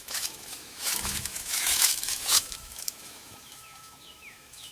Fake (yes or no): yes